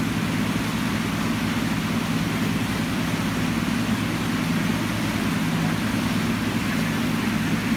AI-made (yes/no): no